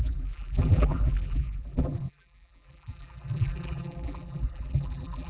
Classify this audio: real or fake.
fake